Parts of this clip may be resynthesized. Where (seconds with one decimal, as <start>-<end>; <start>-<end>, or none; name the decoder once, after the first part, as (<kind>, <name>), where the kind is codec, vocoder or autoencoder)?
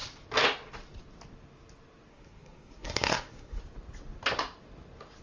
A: 2.1-3.6 (codec, SNAC)